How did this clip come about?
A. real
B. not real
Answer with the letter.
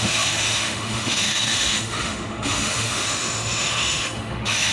B